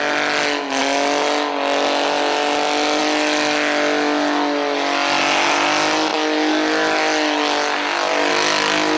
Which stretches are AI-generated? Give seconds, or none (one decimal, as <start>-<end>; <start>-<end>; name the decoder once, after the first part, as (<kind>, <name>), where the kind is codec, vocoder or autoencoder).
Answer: none